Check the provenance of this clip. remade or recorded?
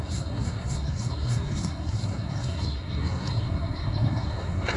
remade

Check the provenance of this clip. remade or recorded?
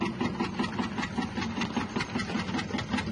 recorded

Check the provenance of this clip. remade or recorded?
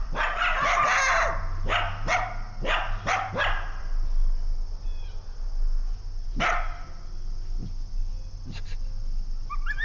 recorded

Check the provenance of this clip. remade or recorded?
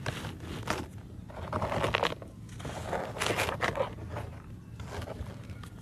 recorded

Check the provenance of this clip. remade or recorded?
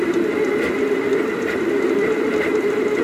recorded